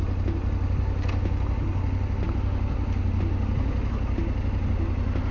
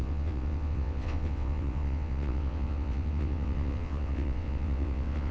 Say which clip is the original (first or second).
first